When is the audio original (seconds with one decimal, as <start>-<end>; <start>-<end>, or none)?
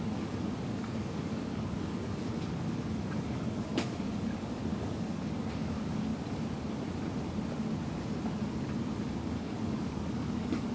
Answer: 6.1-9.2